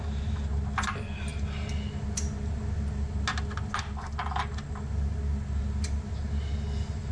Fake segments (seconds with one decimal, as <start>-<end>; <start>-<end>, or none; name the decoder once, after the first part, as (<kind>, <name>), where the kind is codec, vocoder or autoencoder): none